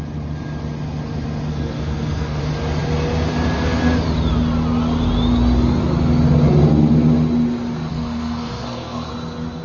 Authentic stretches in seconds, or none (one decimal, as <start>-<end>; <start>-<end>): 0.0-1.5; 2.4-7.9; 9.1-9.6